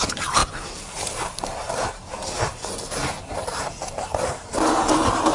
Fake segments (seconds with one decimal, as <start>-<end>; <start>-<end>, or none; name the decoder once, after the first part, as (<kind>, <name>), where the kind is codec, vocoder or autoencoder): 0.0-5.3 (vocoder, BigVGAN v2)